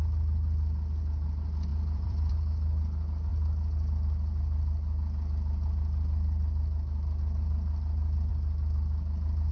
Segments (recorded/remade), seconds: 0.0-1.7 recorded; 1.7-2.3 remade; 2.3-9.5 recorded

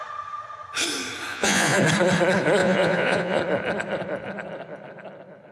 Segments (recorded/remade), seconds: 0.0-1.3 recorded; 1.3-1.8 remade; 1.8-2.6 recorded; 2.6-3.4 remade; 3.4-5.5 recorded